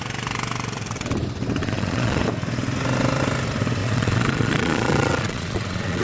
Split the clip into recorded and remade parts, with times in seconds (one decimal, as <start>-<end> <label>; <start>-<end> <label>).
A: 0.0-1.6 recorded; 1.6-2.2 remade; 2.2-3.8 recorded; 3.8-6.0 remade